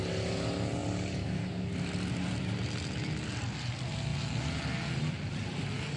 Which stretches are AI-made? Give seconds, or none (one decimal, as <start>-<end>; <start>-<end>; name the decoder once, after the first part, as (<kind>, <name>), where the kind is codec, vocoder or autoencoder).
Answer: none